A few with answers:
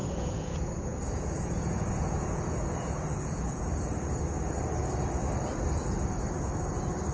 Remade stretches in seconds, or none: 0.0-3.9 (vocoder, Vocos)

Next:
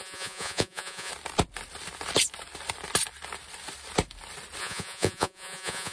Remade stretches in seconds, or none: 0.0-1.1 (vocoder, Vocos); 4.6-5.9

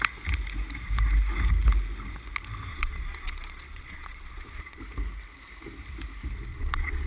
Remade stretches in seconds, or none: 2.7-4.8 (vocoder, Vocos); 6.5-7.1

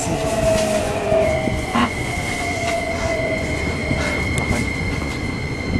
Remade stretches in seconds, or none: 0.8-3.8 (vocoder, Vocos); 4.5-5.8

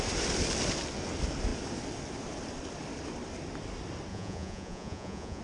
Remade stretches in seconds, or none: 4.1-5.4 (vocoder, Vocos)

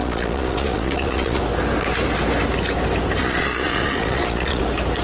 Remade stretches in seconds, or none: 0.0-1.4 (vocoder, Vocos); 3.2-4.6

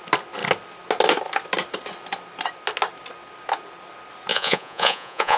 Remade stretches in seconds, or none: 4.3-5.4 (vocoder, Vocos)